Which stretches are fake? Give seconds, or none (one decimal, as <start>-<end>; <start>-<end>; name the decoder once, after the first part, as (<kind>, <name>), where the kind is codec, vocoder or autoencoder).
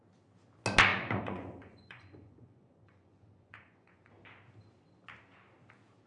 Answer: 0.9-4.1 (vocoder, Vocos)